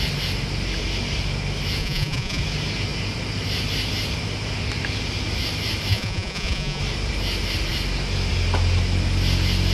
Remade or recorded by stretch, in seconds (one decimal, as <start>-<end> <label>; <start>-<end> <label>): 0.0-1.8 recorded; 1.8-2.4 remade; 2.4-5.9 recorded; 5.9-6.8 remade; 6.8-9.7 recorded